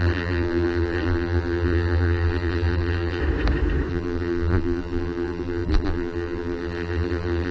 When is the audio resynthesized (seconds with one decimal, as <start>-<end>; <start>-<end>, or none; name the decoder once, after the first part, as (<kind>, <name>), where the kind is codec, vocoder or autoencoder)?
0.0-3.2 (vocoder, BigVGAN v2); 3.9-7.5